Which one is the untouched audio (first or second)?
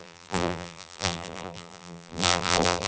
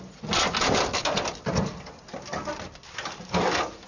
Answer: second